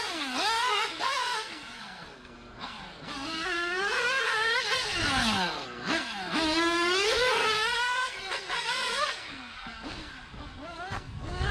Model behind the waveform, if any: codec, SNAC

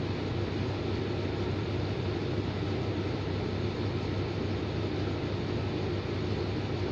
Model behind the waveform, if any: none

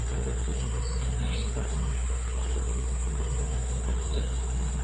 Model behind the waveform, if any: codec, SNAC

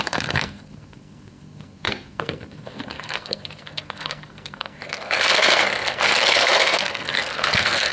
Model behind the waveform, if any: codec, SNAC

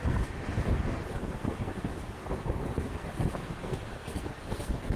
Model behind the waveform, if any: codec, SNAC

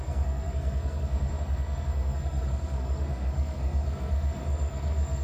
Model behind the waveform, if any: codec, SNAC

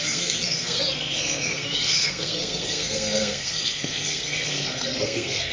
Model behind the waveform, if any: codec, SNAC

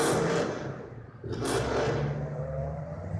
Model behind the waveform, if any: none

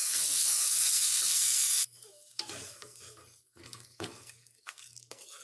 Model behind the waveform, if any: codec, SNAC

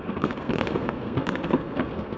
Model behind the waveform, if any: codec, SNAC